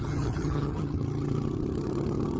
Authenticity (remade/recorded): remade